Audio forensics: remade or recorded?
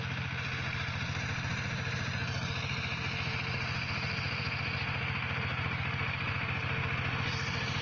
recorded